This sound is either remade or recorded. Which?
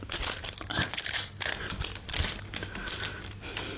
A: recorded